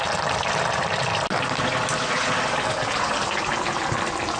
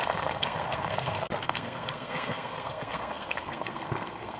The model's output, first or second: second